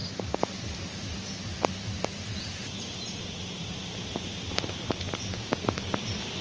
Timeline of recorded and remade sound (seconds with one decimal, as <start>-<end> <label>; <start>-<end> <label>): 0.0-5.3 recorded; 5.3-5.9 remade; 5.9-6.4 recorded